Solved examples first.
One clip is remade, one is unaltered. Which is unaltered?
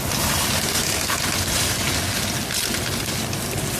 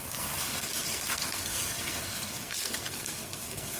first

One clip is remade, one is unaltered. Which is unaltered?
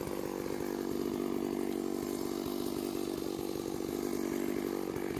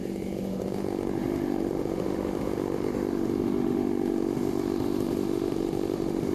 first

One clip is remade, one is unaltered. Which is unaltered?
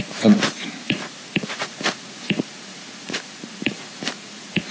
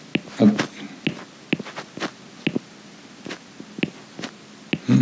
second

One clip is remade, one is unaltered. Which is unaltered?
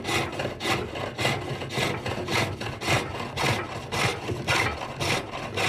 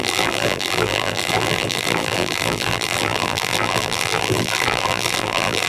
first